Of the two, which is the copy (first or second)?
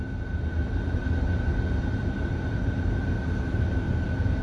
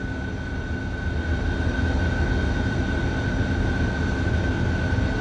first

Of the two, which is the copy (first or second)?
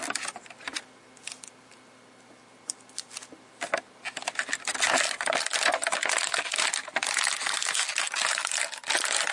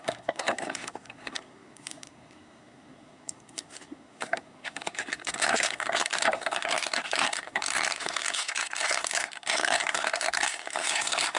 second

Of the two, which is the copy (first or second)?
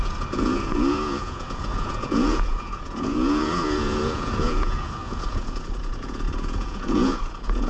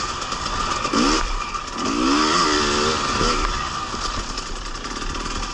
first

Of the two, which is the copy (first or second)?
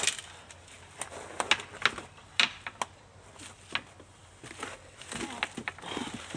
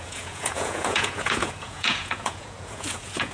second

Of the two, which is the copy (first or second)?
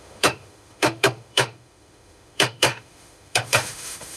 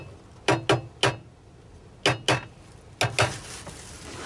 first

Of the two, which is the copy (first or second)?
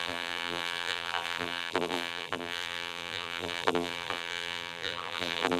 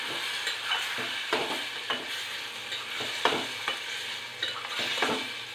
first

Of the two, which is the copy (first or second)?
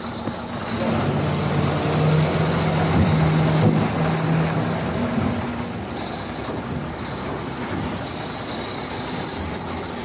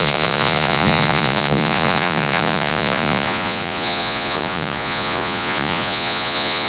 second